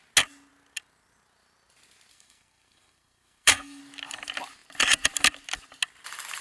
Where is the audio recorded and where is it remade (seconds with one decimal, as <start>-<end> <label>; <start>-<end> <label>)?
0.0-2.1 recorded; 2.1-3.8 remade; 3.8-6.4 recorded